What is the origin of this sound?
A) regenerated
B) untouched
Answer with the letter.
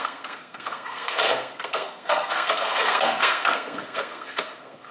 A